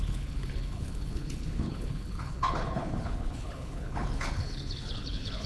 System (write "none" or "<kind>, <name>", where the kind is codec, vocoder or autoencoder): codec, HILCodec